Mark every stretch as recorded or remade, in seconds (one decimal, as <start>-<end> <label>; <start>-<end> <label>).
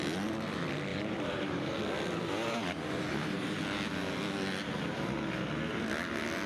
0.0-0.9 recorded; 0.9-1.8 remade; 1.8-3.1 recorded; 3.1-3.6 remade; 3.6-6.5 recorded